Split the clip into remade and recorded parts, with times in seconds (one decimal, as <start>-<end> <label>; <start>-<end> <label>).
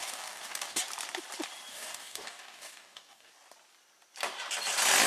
0.0-0.8 remade; 0.8-1.7 recorded; 1.7-3.3 remade; 3.3-5.1 recorded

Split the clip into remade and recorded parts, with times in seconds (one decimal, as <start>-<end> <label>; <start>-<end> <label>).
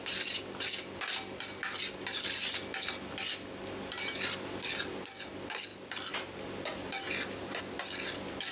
0.0-8.5 recorded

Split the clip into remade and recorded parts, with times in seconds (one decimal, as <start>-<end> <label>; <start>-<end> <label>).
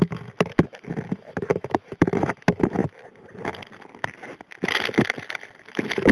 0.0-2.8 remade; 2.8-5.6 recorded; 5.6-6.1 remade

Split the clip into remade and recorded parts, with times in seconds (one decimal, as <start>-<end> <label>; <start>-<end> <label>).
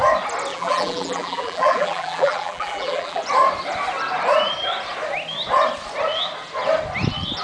0.0-0.5 recorded; 0.5-3.2 remade; 3.2-7.4 recorded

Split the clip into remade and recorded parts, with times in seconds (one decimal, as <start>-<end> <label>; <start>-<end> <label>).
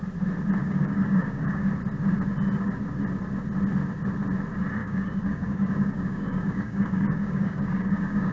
0.0-0.6 recorded; 0.6-1.7 remade; 1.7-4.8 recorded; 4.8-8.3 remade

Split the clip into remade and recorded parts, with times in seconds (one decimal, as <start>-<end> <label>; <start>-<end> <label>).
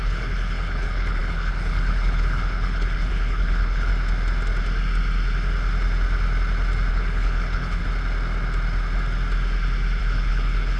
0.0-3.9 remade; 3.9-6.9 recorded; 6.9-7.8 remade; 7.8-10.0 recorded; 10.0-10.8 remade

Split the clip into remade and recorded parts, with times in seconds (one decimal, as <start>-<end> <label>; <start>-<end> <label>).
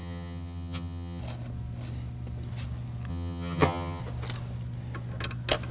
0.0-1.2 remade; 1.2-3.1 recorded; 3.1-4.0 remade; 4.0-5.7 recorded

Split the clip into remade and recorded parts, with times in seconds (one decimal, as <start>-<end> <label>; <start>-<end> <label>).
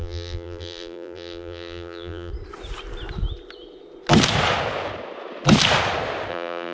0.0-2.3 remade; 2.3-6.3 recorded; 6.3-6.7 remade